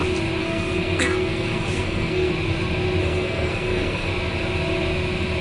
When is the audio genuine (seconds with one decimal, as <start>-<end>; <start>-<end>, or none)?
0.0-0.4; 2.3-3.0; 4.1-5.4

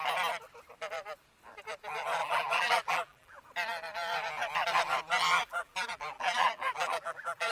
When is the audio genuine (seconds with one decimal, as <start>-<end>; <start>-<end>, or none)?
0.0-2.2; 3.4-5.4

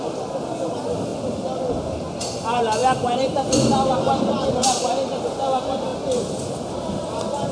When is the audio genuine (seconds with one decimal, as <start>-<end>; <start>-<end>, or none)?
0.0-7.5

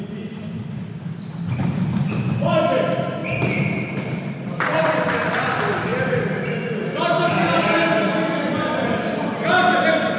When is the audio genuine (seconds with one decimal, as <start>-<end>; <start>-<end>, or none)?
0.0-10.2